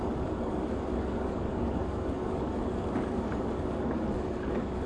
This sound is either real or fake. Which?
fake